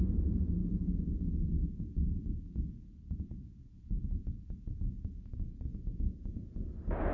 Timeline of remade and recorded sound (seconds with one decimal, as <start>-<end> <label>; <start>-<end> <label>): 0.0-2.9 recorded; 2.9-4.0 remade; 4.0-7.1 recorded